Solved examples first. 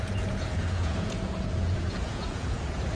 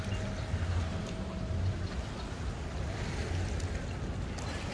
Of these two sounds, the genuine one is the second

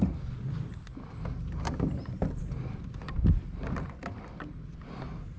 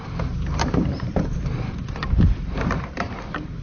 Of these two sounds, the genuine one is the first